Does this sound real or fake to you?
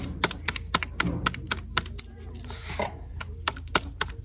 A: real